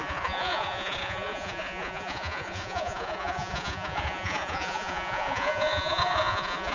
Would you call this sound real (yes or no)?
no